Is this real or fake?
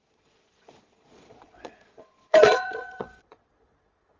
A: fake